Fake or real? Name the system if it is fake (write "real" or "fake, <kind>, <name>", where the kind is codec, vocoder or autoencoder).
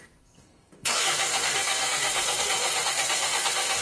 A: fake, codec, SNAC